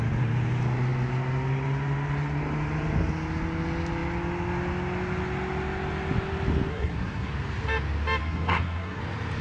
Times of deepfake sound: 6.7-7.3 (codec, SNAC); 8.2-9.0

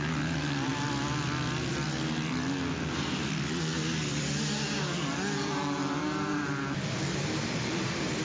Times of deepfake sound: none

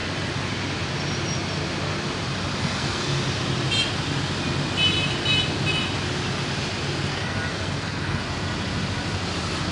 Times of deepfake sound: 2.6-3.1 (codec, SNAC); 7.1-8.2

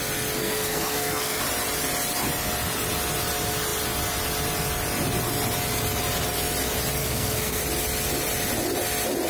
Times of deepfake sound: 0.4-1.4 (codec, SNAC); 7.0-7.6

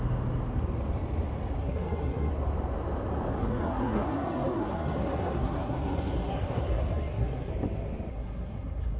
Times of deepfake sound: 1.6-2.3 (codec, SNAC); 3.4-7.5; 8.1-9.0

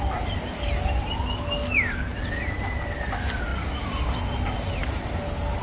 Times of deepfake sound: none